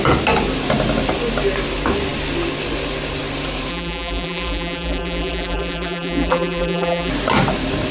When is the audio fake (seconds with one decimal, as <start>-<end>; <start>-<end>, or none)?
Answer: 3.7-7.1